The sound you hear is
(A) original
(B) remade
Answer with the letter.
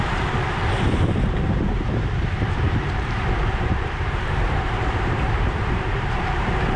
B